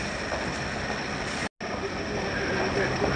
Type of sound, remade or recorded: recorded